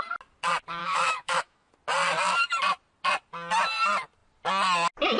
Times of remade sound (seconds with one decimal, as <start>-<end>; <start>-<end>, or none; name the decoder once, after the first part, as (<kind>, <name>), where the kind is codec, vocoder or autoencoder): 0.8-1.7 (autoencoder, DAC-VAE)